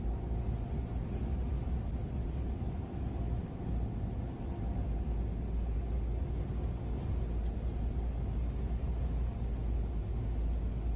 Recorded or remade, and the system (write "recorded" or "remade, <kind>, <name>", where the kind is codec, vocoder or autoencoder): recorded